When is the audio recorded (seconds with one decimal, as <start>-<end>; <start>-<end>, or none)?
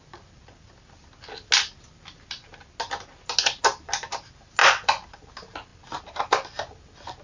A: 0.0-4.6; 5.3-5.7; 6.7-7.2